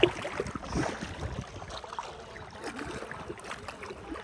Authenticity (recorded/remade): recorded